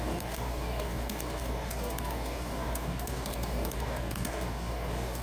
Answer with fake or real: fake